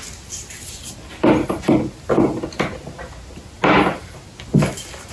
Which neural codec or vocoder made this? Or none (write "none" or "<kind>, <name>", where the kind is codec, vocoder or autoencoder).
none